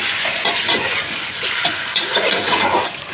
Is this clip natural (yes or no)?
no